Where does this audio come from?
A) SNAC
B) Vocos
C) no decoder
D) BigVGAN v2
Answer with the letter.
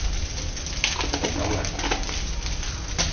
C